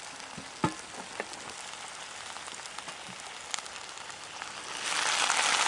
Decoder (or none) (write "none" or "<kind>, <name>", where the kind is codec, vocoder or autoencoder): none